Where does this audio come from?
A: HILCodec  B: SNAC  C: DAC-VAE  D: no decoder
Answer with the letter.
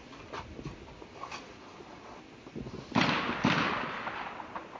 D